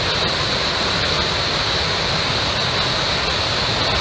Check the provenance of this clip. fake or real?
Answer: real